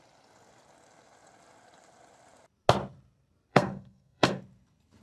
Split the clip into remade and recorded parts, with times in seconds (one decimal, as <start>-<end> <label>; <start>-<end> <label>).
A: 0.0-3.5 recorded; 3.5-4.4 remade; 4.4-5.0 recorded